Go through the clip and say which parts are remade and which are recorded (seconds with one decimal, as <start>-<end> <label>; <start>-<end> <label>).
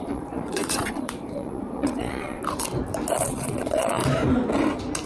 0.0-2.4 remade; 2.4-3.2 recorded; 3.2-4.0 remade; 4.0-5.1 recorded